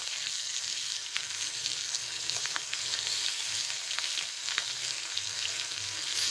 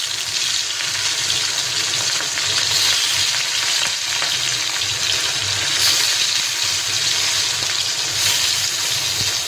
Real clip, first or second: second